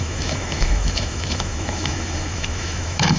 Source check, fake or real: fake